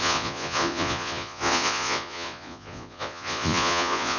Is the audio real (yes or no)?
no